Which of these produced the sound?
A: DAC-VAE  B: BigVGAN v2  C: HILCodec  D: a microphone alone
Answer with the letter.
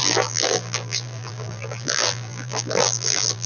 B